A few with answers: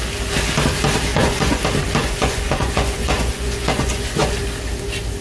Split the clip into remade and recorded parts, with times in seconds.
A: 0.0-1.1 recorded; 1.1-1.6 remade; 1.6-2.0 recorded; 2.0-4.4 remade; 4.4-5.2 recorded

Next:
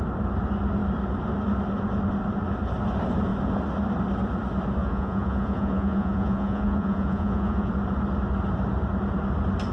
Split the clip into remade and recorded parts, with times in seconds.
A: 0.0-4.8 recorded; 4.8-7.7 remade; 7.7-9.7 recorded

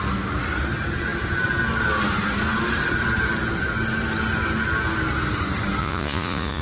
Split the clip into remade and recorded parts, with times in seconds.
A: 0.0-5.8 recorded; 5.8-6.6 remade

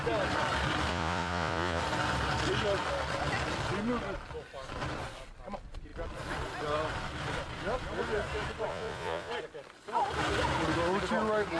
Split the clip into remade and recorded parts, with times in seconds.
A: 0.0-0.9 recorded; 0.9-1.8 remade; 1.8-8.7 recorded; 8.7-9.3 remade; 9.3-11.6 recorded

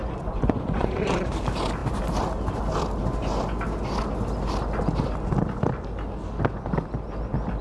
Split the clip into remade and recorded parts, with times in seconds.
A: 0.0-1.2 remade; 1.2-7.6 recorded

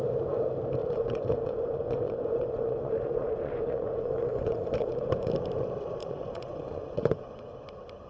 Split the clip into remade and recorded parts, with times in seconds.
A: 0.0-0.8 recorded; 0.8-5.3 remade; 5.3-6.0 recorded; 6.0-7.4 remade; 7.4-8.1 recorded